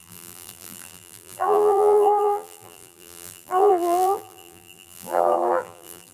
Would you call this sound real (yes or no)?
no